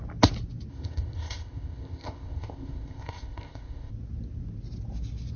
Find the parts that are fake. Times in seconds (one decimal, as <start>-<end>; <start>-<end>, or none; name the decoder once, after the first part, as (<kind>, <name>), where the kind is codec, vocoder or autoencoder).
0.7-3.9 (codec, ZipCodec)